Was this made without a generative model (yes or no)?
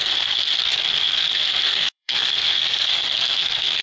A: no